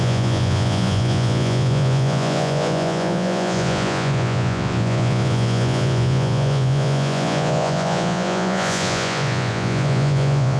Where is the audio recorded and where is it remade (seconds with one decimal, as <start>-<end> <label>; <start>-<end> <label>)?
0.0-10.6 remade

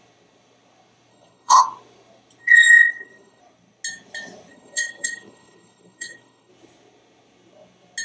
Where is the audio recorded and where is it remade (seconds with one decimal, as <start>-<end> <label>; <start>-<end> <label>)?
0.0-1.1 recorded; 1.1-1.6 remade; 1.6-2.4 recorded; 2.4-3.4 remade; 3.4-4.5 recorded; 4.5-6.5 remade; 6.5-8.0 recorded

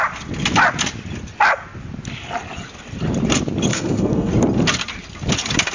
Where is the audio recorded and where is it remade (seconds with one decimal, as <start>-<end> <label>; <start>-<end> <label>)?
0.0-3.7 recorded; 3.7-4.3 remade; 4.3-5.7 recorded